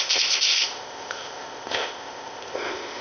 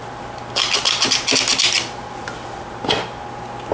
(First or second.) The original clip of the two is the second